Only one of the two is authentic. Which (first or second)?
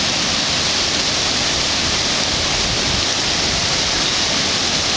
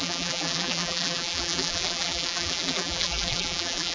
first